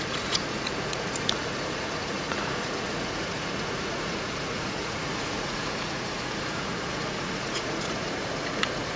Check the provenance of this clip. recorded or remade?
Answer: remade